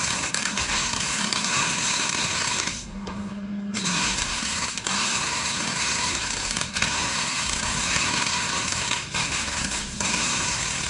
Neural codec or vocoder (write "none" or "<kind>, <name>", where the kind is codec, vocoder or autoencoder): codec, SNAC